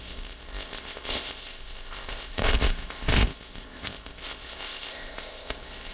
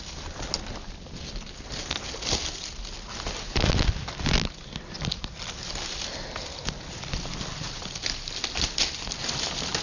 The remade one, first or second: first